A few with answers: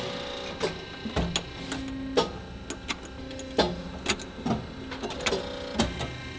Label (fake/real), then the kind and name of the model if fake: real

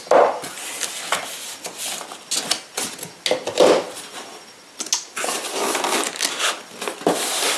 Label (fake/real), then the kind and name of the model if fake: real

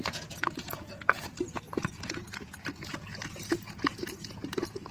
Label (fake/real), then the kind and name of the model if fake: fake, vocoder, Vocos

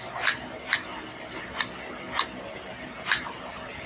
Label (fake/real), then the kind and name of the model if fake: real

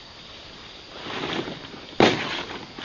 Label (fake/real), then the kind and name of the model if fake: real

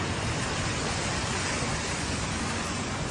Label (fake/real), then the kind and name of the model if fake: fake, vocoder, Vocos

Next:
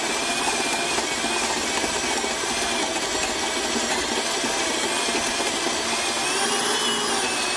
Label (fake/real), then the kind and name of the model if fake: real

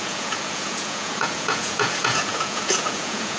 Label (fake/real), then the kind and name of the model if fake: fake, vocoder, Vocos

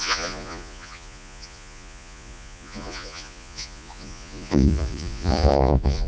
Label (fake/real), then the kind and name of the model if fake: fake, vocoder, Vocos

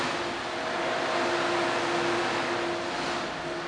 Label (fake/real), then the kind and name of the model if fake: real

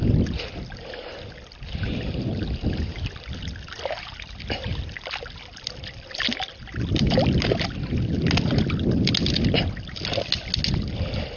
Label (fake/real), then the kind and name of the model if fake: real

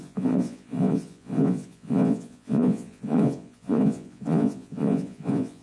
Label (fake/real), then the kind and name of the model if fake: fake, vocoder, Vocos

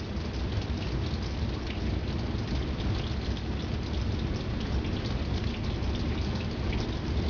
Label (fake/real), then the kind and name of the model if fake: real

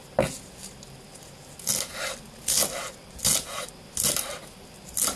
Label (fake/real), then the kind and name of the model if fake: real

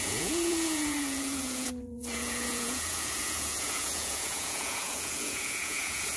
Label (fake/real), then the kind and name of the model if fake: fake, vocoder, Vocos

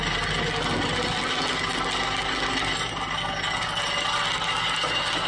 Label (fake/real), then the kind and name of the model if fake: real